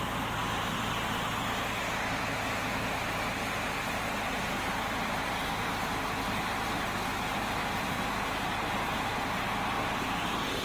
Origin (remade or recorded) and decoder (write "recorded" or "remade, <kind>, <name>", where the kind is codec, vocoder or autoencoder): recorded